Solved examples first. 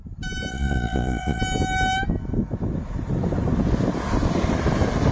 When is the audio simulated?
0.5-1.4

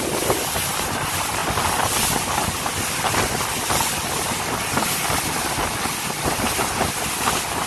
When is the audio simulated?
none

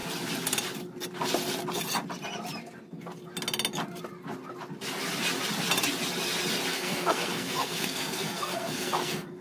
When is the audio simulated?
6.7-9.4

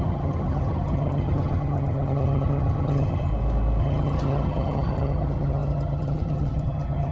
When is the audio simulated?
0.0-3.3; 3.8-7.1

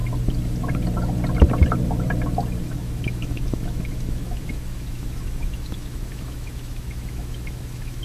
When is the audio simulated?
2.6-8.0

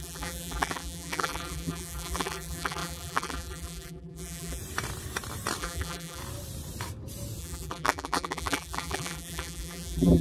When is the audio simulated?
0.0-4.6; 5.6-6.2; 7.4-10.2

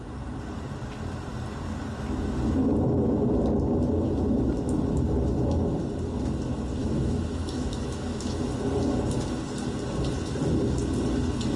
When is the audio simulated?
6.8-8.5

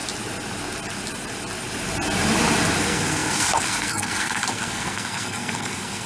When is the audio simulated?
2.8-6.1